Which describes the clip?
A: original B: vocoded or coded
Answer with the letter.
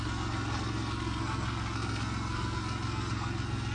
B